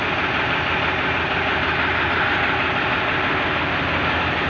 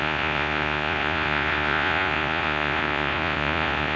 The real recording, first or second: first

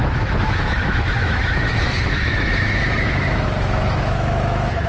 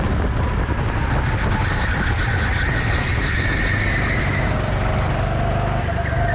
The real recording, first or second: second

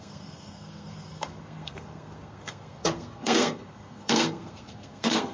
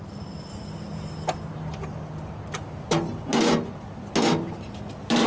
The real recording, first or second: second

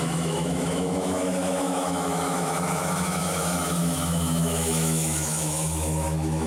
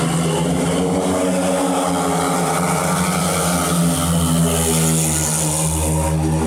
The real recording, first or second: second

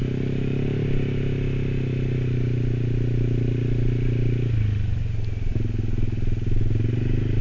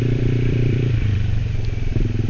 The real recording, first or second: first